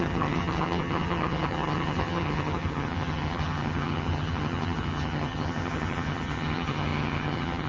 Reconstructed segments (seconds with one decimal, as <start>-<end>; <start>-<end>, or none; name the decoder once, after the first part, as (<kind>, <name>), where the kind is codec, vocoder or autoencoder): 0.0-7.7 (vocoder, HiFi-GAN)